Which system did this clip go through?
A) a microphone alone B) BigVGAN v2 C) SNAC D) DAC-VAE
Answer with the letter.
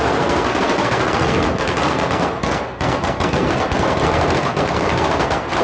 C